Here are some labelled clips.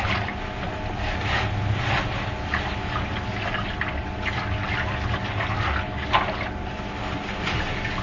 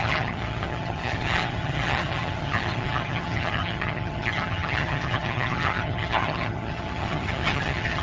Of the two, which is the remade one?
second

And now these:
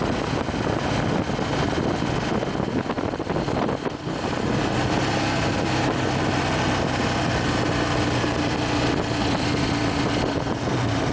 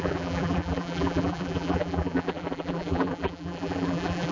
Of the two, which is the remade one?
second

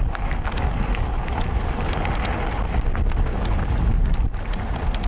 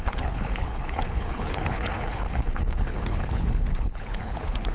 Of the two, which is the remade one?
second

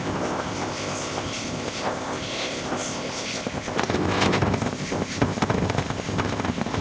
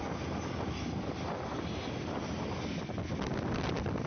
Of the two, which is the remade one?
first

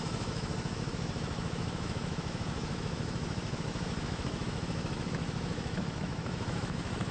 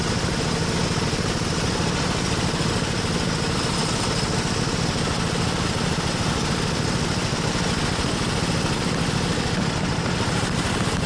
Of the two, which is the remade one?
first